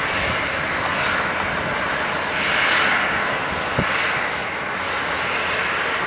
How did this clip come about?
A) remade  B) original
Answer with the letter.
B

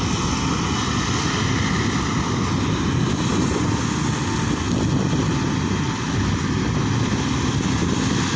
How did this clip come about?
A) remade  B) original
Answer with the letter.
B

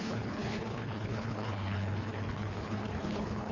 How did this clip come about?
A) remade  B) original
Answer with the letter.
A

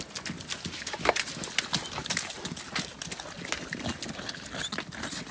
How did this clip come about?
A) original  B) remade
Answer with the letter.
A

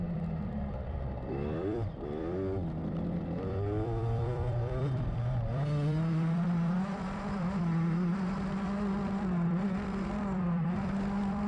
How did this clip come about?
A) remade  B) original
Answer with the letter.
A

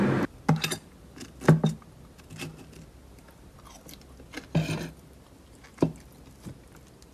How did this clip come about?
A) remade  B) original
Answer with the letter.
B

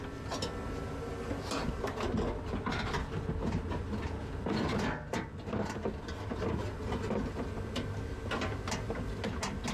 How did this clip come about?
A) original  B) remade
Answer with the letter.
A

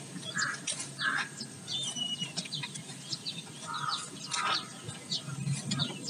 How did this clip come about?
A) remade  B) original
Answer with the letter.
B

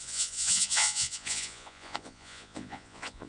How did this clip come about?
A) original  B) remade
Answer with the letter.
B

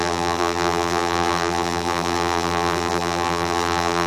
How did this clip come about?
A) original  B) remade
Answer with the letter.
B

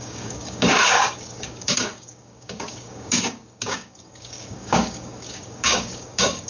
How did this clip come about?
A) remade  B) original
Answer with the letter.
A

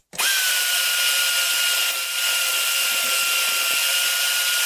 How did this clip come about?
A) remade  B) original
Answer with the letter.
B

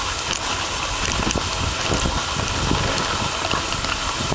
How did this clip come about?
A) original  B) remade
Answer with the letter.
A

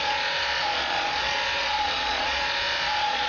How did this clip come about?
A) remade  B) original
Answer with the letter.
A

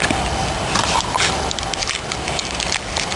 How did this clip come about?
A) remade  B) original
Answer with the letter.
A